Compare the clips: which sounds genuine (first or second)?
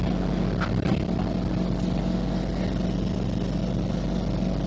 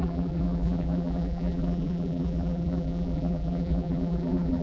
first